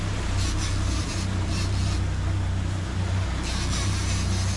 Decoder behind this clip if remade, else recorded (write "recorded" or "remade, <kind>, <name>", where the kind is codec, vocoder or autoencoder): recorded